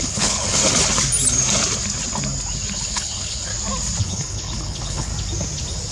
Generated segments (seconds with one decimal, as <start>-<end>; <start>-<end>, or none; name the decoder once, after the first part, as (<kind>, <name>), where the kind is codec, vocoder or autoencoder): 0.0-0.6 (codec, HILCodec); 2.7-3.5; 4.0-5.1